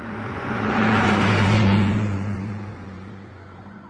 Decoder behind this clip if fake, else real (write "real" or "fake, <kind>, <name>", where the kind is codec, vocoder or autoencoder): fake, vocoder, Vocos